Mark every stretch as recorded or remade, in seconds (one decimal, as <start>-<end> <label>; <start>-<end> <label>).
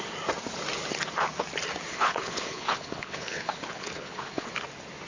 0.0-1.9 recorded; 1.9-4.5 remade; 4.5-5.1 recorded